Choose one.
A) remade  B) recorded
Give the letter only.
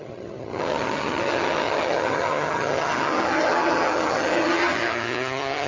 A